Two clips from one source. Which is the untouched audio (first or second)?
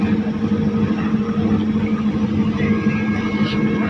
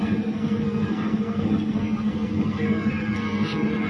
first